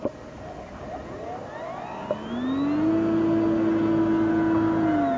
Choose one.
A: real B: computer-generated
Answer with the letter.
A